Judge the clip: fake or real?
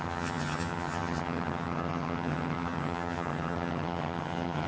fake